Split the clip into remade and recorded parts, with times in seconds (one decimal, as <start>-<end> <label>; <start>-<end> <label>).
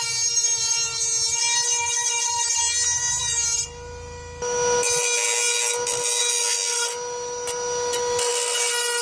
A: 0.0-9.0 recorded